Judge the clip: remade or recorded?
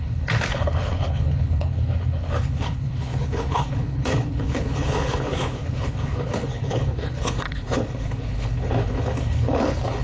remade